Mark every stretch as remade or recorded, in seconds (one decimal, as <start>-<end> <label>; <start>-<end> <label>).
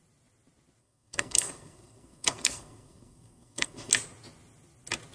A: 0.0-0.8 recorded; 0.8-3.9 remade; 3.9-5.1 recorded